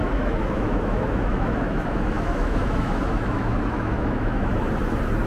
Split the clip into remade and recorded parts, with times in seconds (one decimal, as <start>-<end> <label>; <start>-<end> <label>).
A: 0.0-4.5 remade; 4.5-5.3 recorded